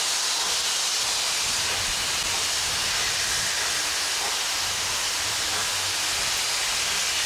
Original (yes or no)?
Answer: yes